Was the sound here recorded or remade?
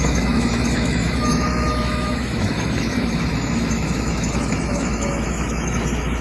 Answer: remade